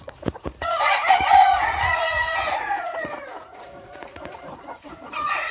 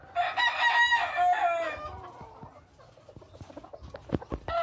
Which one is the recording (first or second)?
second